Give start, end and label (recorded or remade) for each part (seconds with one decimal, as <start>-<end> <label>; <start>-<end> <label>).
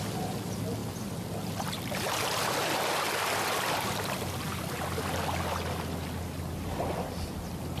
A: 0.0-7.8 recorded